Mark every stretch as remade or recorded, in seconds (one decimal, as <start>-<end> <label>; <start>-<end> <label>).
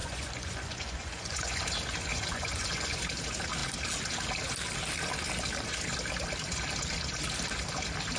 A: 0.0-1.6 remade; 1.6-2.1 recorded; 2.1-3.0 remade; 3.0-8.2 recorded